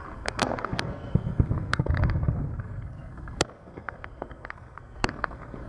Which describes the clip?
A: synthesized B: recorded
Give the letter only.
A